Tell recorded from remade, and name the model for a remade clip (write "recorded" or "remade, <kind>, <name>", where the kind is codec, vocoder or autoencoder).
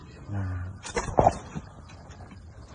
remade, vocoder, BigVGAN v2